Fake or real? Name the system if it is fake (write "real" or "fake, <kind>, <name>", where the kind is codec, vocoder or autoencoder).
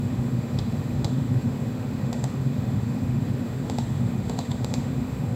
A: fake, autoencoder, DAC-VAE